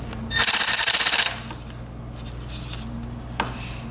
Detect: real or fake real